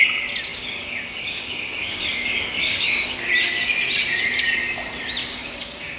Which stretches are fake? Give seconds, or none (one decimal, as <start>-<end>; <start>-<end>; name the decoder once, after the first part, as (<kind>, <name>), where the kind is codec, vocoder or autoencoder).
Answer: 0.5-3.3 (codec, DAC); 5.2-6.0